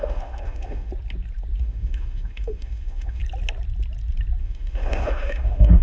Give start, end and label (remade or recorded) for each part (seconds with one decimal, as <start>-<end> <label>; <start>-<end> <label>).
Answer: 0.0-0.9 remade; 0.9-1.6 recorded; 1.6-3.2 remade; 3.2-4.4 recorded; 4.4-5.8 remade